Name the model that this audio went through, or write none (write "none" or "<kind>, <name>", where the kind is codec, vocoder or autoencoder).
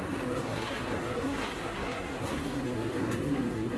codec, SNAC